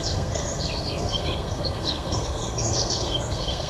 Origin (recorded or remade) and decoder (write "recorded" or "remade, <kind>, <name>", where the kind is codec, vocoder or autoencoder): remade, codec, SNAC